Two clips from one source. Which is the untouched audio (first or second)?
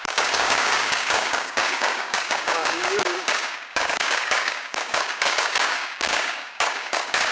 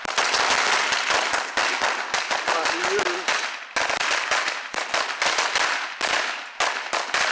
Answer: second